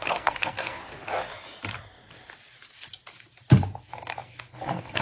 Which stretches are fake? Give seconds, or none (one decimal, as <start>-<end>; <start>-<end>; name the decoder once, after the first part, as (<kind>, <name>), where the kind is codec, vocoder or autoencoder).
0.0-0.8 (codec, SNAC); 3.8-5.0